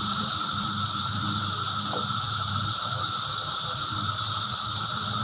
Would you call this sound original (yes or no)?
no